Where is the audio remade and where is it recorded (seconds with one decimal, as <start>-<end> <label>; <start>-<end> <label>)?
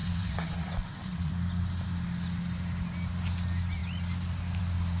0.0-1.3 remade; 1.3-5.0 recorded